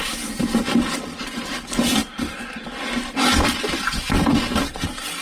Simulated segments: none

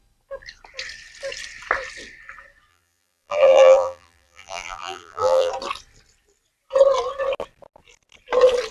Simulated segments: 2.7-5.5 (vocoder, BigVGAN v2)